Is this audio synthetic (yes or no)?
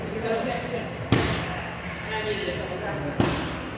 no